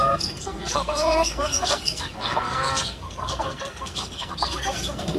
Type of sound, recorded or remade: remade